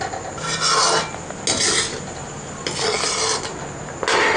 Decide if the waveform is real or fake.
real